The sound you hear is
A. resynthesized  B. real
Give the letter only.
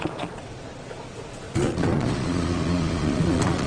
A